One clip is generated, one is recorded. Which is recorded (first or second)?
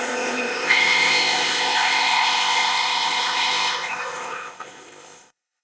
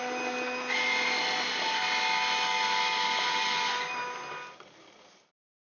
second